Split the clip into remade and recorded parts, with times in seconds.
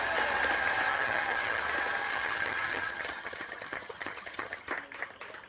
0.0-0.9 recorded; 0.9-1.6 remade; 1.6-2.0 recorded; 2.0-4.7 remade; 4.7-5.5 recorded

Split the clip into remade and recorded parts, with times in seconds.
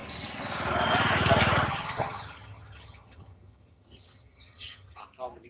0.0-1.7 recorded; 1.7-5.0 remade; 5.0-5.5 recorded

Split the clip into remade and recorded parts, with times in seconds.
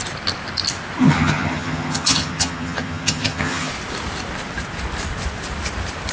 0.0-1.0 recorded; 1.0-3.7 remade; 3.7-6.1 recorded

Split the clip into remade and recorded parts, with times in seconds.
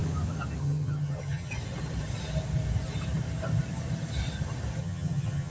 0.0-0.6 recorded; 0.6-1.5 remade; 1.5-4.8 recorded; 4.8-5.5 remade